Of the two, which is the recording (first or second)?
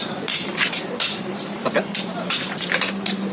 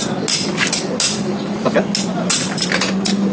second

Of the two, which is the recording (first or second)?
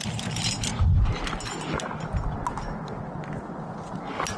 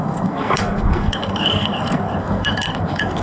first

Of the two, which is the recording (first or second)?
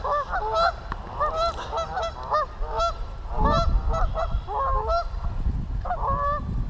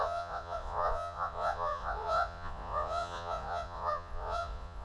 first